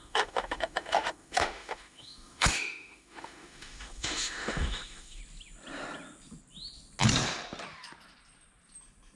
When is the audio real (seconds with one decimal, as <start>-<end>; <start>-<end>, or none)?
5.2-9.2